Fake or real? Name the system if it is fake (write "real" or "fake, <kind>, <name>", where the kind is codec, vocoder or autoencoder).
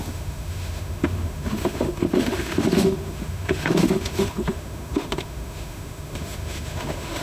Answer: fake, autoencoder, DAC-VAE